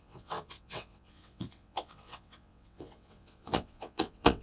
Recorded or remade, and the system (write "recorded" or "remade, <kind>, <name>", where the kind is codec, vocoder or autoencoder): remade, vocoder, WaveNeXt